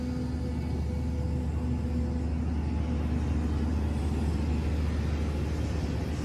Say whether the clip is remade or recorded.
recorded